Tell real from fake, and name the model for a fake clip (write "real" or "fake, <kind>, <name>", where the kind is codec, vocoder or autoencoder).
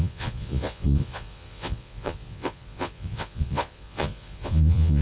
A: fake, vocoder, Vocos